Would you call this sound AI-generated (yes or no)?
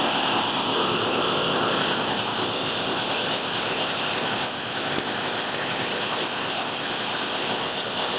yes